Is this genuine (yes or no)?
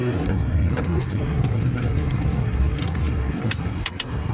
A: no